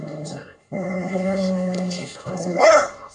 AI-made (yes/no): yes